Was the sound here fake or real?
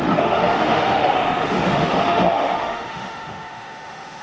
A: fake